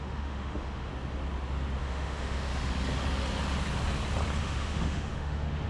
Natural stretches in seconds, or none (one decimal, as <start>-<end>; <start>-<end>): 0.9-1.8; 2.5-4.4